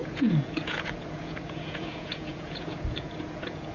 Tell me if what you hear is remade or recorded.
remade